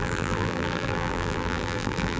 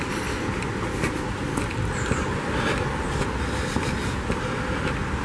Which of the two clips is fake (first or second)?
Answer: first